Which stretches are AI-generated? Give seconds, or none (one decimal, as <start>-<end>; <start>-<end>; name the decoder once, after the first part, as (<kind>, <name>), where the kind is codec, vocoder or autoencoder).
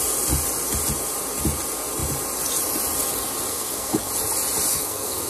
3.5-4.1 (codec, SNAC); 4.7-5.3